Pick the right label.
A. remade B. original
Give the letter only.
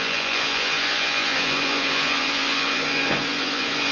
A